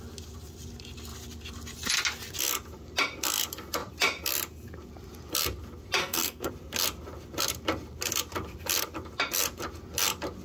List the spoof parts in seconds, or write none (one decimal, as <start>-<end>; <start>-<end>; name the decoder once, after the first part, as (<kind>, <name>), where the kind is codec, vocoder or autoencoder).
6.0-6.5 (codec, SNAC)